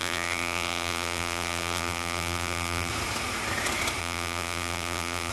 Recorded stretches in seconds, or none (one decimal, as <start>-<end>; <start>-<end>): 2.9-4.0